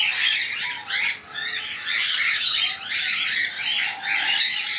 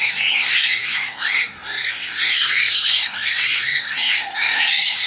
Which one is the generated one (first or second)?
second